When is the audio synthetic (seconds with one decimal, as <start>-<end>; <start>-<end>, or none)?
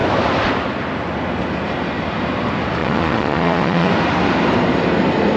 2.8-3.9